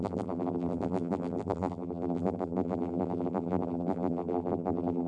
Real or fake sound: fake